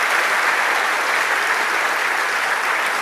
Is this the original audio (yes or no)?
yes